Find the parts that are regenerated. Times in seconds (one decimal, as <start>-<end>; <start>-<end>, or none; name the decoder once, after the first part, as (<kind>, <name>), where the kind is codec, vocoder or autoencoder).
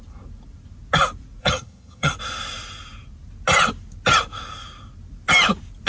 1.4-2.1 (vocoder, HiFi-GAN)